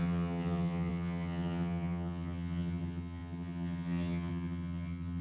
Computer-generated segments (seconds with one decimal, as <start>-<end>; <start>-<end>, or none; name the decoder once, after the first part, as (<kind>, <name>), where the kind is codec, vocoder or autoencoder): 0.0-5.2 (vocoder, HiFi-GAN)